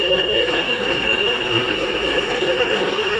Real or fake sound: fake